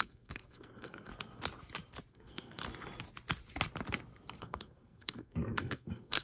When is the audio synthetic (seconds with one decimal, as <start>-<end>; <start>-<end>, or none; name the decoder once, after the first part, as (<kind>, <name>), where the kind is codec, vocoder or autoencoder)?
0.0-1.1 (codec, SNAC); 2.1-2.6; 4.4-6.2